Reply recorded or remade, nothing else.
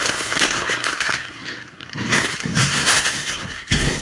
remade